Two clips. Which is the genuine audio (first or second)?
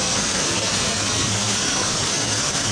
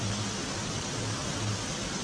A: second